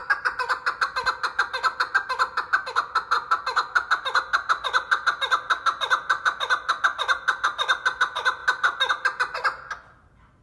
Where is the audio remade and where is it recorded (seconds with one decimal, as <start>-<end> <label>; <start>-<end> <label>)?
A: 0.0-10.4 recorded